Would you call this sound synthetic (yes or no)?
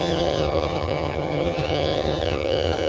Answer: yes